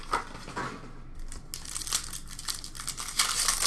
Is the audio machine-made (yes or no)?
no